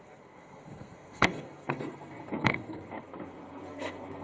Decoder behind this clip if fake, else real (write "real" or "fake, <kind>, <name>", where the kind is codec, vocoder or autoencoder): fake, codec, SNAC